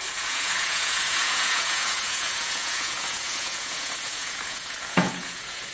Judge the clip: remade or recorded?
remade